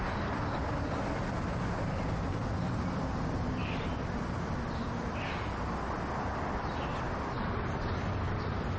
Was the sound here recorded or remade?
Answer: recorded